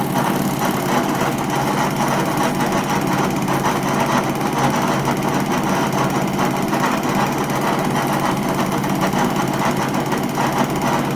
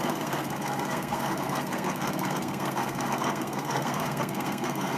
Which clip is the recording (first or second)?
first